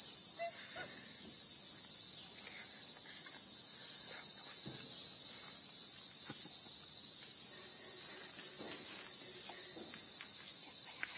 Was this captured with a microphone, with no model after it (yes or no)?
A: yes